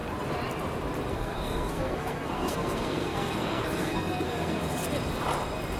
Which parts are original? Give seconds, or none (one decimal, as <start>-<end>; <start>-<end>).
0.0-1.1; 4.6-5.8